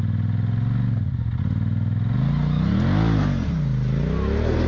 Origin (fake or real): real